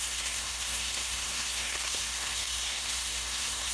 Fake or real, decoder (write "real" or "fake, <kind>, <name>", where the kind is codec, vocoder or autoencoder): fake, codec, SNAC